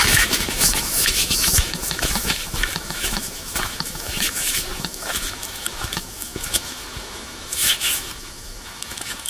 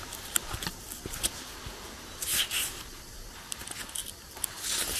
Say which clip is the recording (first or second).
second